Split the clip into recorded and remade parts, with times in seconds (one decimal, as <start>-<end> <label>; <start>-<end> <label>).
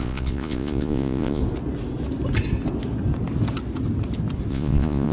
0.0-1.4 remade; 1.4-4.5 recorded; 4.5-5.1 remade